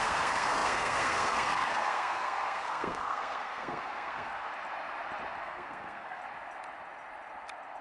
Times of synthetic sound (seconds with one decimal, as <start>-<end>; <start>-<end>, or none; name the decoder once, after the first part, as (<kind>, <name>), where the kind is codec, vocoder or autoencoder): 0.0-4.5 (codec, SNAC); 5.4-6.2